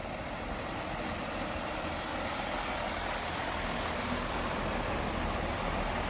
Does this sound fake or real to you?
real